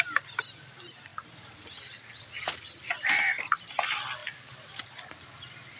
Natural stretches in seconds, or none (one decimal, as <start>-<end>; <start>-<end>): 0.0-5.8